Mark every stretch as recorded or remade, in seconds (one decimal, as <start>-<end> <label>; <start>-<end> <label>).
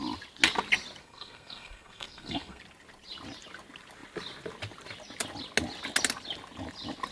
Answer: 0.0-1.0 recorded; 1.0-2.6 remade; 2.6-7.1 recorded